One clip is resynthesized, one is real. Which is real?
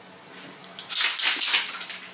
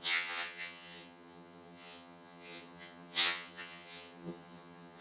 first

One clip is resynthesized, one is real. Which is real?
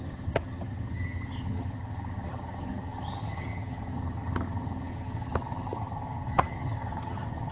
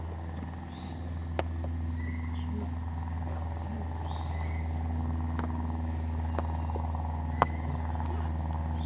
second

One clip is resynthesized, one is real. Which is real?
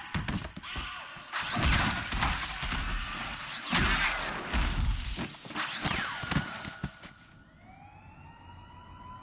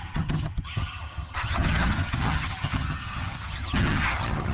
first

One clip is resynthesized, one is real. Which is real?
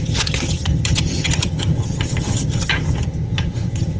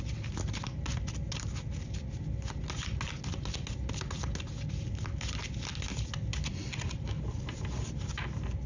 second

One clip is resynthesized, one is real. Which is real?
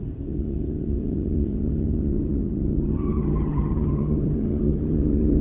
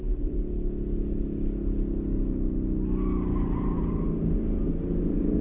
second